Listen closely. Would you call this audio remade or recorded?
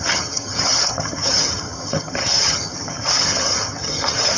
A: remade